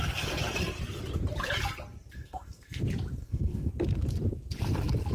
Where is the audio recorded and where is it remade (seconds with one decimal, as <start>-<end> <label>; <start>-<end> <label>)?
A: 0.0-2.2 recorded; 2.2-2.8 remade; 2.8-3.2 recorded; 3.2-3.7 remade; 3.7-5.1 recorded